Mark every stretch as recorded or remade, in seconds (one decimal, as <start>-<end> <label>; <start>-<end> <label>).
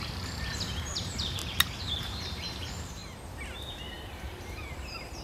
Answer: 0.0-1.4 remade; 1.4-1.9 recorded; 1.9-3.0 remade; 3.0-3.8 recorded; 3.8-5.2 remade